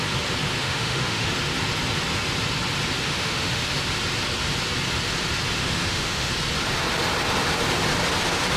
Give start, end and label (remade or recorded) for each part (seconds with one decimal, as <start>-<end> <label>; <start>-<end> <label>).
0.0-0.6 recorded; 0.6-1.3 remade; 1.3-3.0 recorded; 3.0-3.6 remade; 3.6-5.6 recorded; 5.6-6.3 remade; 6.3-8.6 recorded

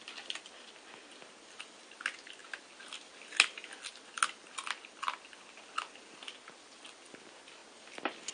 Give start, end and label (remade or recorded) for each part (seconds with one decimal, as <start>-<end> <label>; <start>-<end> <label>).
0.0-8.3 recorded

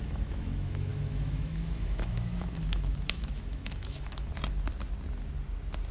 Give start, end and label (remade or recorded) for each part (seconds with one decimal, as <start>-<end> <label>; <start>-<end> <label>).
0.0-4.3 remade; 4.3-5.9 recorded

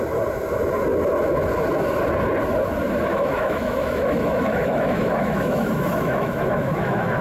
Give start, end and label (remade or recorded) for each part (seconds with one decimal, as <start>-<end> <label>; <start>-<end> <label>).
0.0-3.1 recorded; 3.1-7.2 remade